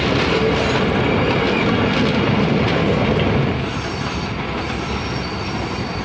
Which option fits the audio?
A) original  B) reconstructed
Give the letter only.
A